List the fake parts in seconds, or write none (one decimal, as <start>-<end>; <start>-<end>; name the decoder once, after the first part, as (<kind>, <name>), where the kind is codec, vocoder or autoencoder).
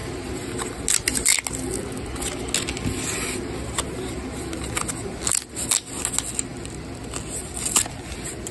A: none